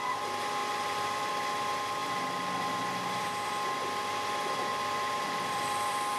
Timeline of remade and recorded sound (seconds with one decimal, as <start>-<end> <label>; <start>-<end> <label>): 0.0-0.6 recorded; 0.6-1.3 remade; 1.3-2.0 recorded; 2.0-3.5 remade; 3.5-4.7 recorded; 4.7-6.2 remade